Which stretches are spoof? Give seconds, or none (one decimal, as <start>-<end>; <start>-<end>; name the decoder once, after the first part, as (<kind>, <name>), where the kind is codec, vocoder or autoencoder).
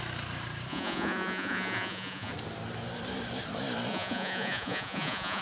0.7-2.3 (vocoder, Vocos); 3.9-5.4